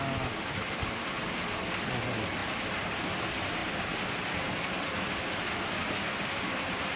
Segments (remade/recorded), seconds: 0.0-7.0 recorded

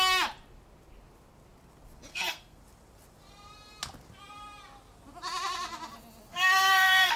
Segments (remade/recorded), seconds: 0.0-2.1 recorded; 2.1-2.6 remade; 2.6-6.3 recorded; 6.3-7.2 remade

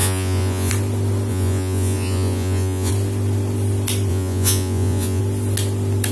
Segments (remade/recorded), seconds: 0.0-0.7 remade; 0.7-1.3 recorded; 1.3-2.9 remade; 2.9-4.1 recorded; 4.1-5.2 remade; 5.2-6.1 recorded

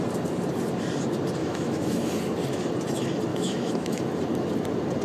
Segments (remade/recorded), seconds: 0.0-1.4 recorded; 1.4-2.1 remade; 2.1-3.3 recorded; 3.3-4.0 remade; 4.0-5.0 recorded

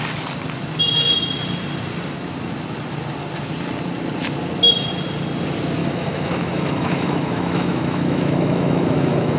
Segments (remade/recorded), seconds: 0.0-5.8 recorded; 5.8-9.4 remade

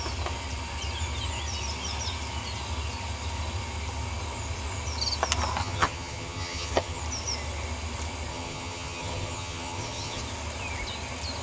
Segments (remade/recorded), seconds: 0.0-5.6 recorded; 5.6-7.0 remade; 7.0-8.3 recorded; 8.3-10.2 remade; 10.2-11.4 recorded